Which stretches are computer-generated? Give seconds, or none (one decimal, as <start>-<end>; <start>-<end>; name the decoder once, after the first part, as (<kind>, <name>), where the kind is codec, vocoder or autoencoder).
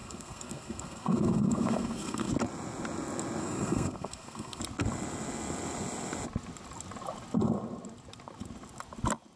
0.0-2.3 (codec, SNAC); 3.4-4.6